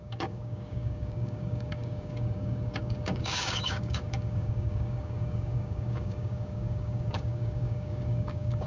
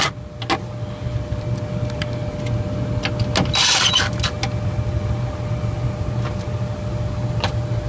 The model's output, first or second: first